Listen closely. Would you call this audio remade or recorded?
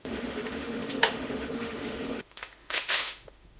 remade